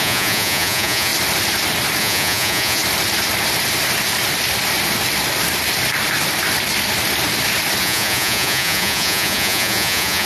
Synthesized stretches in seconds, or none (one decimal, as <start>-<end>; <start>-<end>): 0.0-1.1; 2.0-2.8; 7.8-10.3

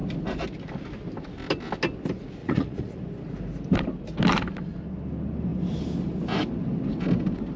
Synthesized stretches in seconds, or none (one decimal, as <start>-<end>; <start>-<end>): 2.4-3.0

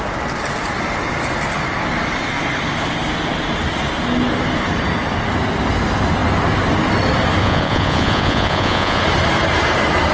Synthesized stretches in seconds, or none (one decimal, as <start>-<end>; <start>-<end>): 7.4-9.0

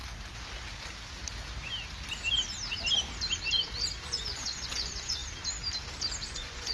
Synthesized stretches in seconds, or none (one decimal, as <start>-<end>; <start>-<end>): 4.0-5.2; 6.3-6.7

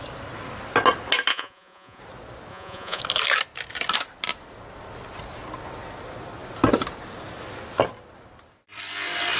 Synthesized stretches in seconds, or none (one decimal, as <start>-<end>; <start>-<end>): 1.3-2.0; 2.5-3.0